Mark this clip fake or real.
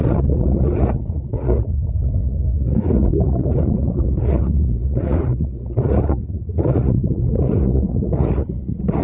fake